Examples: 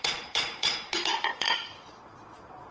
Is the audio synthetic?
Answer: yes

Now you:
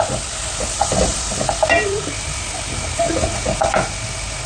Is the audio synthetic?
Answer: no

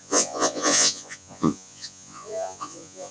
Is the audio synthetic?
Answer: yes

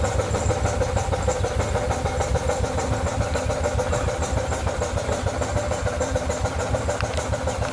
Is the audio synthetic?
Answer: no